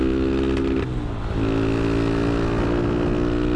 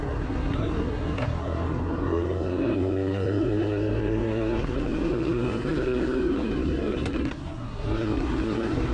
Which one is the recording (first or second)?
first